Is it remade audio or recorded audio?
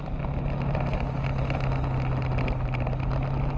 recorded